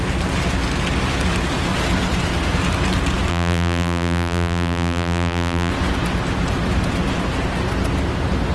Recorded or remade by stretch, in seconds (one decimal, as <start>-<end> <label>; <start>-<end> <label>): 0.0-3.3 recorded; 3.3-5.7 remade; 5.7-8.5 recorded